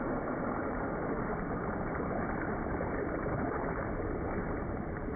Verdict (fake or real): real